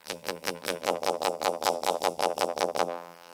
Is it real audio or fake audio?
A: fake